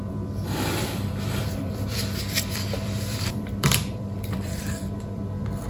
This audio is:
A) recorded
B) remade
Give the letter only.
B